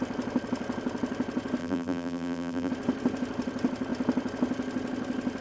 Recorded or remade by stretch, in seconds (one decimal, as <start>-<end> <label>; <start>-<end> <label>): 0.0-1.6 recorded; 1.6-2.7 remade; 2.7-5.4 recorded